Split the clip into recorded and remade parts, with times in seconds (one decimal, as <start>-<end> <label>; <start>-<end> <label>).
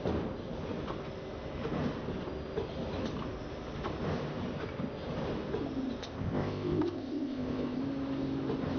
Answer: 0.0-6.0 recorded; 6.0-7.8 remade; 7.8-8.8 recorded